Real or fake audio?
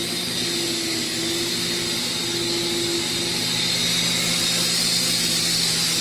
real